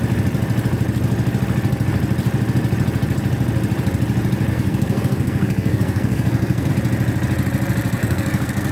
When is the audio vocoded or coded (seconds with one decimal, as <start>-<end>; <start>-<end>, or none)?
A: 4.5-6.7; 8.0-8.7